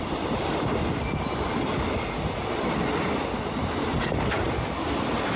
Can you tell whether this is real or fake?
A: real